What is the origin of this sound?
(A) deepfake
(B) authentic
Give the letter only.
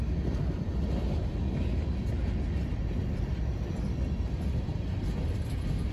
B